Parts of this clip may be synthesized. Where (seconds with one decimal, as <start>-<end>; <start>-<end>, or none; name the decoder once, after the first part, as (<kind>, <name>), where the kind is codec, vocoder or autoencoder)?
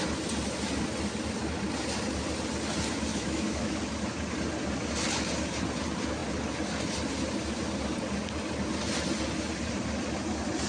3.1-3.8 (autoencoder, DAC-VAE)